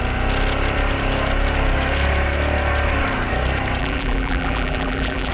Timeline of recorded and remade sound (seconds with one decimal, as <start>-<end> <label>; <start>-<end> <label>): 0.0-3.8 recorded; 3.8-5.3 remade